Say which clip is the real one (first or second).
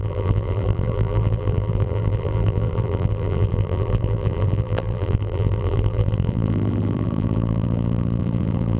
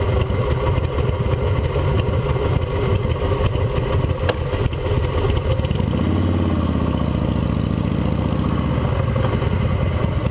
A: second